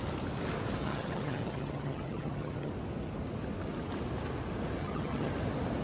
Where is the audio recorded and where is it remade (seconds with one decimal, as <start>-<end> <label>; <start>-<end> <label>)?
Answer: 0.0-0.8 recorded; 0.8-2.7 remade; 2.7-4.8 recorded; 4.8-5.3 remade; 5.3-5.8 recorded